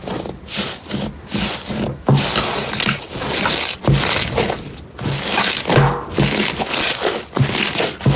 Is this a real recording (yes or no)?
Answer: yes